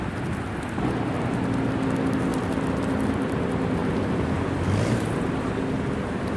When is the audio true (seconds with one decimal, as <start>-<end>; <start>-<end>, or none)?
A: 0.0-2.3; 3.4-3.8; 5.5-6.4